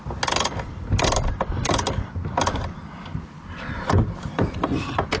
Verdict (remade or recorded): recorded